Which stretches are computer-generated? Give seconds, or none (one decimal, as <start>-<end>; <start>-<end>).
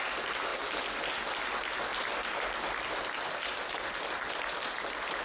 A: none